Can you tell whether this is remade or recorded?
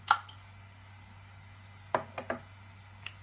recorded